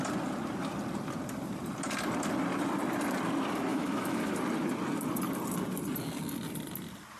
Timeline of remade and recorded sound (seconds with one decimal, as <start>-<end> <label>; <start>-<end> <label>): 0.0-3.7 recorded; 3.7-4.3 remade; 4.3-7.2 recorded